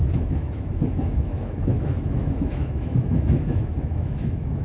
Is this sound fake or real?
fake